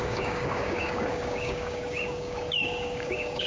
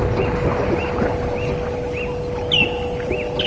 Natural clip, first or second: second